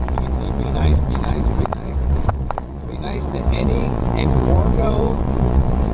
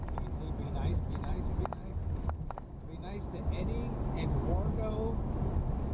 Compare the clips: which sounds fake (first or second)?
first